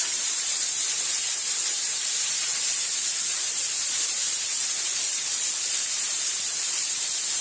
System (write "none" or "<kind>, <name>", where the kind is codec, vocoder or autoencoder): vocoder, BigVGAN v2